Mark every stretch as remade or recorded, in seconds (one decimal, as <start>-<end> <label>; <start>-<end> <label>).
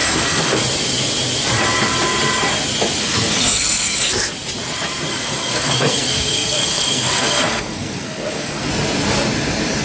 0.0-0.6 remade; 0.6-3.0 recorded; 3.0-4.3 remade; 4.3-5.1 recorded; 5.1-8.7 remade; 8.7-9.8 recorded